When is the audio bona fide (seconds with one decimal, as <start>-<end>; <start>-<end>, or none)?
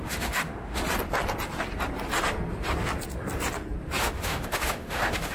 0.8-4.0